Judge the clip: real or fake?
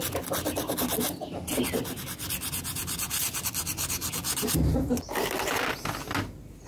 real